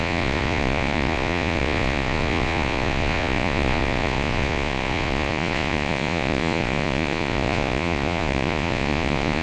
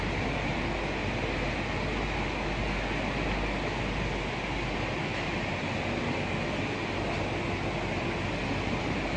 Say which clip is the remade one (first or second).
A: first